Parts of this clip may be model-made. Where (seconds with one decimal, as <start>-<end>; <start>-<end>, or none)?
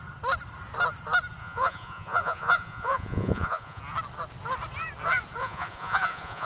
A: 1.4-3.8; 5.4-6.5